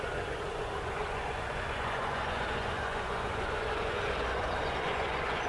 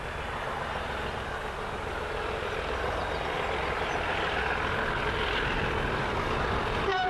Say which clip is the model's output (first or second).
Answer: first